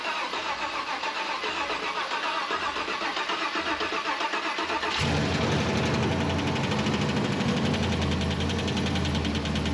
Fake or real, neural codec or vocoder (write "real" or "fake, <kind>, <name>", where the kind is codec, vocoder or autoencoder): real